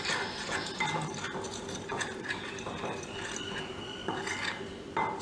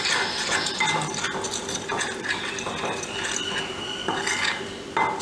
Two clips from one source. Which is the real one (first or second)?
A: second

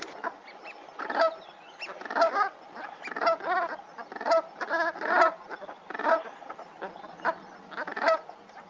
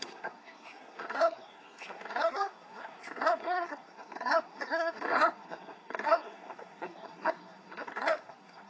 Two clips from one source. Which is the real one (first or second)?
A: first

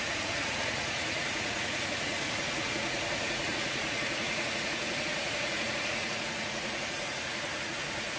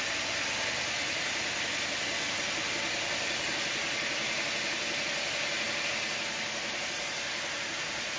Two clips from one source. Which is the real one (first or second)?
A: second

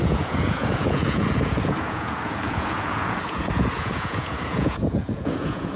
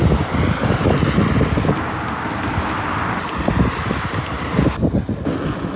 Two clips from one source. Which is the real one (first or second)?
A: second